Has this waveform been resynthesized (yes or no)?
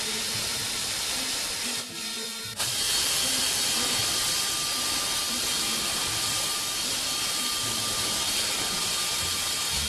yes